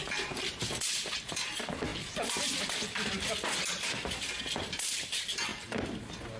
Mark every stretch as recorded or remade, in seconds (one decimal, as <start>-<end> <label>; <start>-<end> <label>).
0.0-6.4 recorded